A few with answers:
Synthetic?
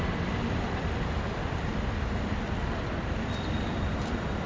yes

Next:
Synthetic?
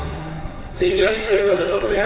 yes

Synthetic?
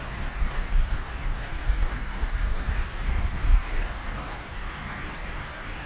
yes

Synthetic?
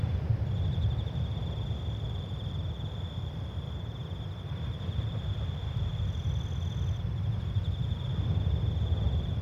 no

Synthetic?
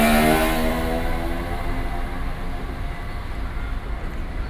no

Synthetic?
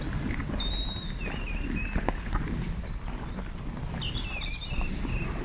no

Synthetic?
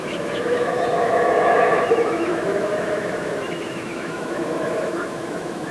yes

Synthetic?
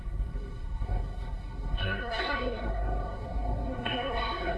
yes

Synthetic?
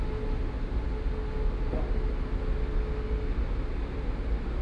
no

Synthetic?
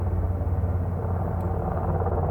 no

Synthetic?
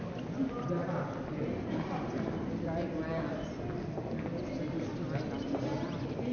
no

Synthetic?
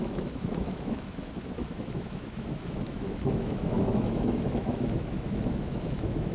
yes